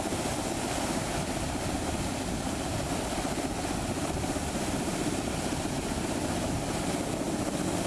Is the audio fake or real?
real